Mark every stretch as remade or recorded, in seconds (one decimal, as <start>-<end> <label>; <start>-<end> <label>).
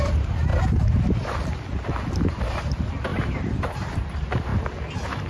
0.0-0.5 remade; 0.5-2.3 recorded; 2.3-4.5 remade; 4.5-5.3 recorded